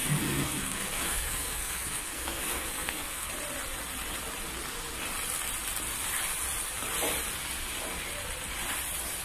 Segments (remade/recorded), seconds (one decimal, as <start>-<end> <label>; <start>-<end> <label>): 0.0-3.3 remade; 3.3-9.2 recorded